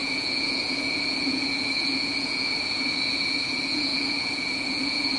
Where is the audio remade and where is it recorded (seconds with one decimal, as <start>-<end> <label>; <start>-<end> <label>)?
0.0-5.2 remade